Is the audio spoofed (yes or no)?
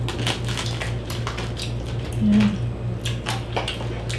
no